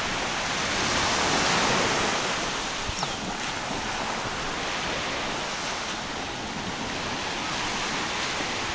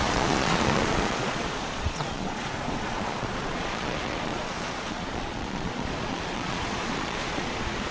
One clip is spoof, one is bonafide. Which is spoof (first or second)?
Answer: second